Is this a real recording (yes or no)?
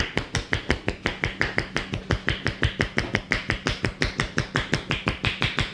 yes